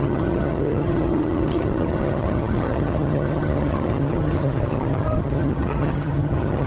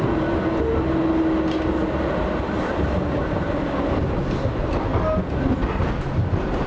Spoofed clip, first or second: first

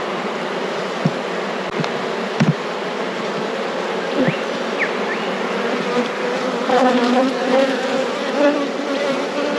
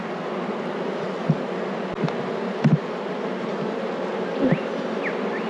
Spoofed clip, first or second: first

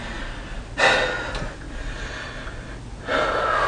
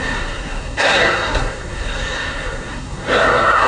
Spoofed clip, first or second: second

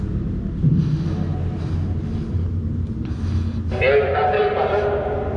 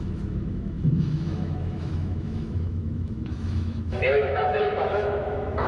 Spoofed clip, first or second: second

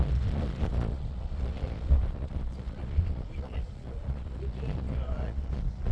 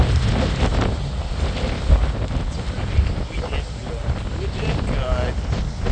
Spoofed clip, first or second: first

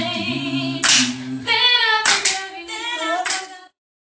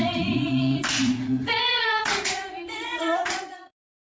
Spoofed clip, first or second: second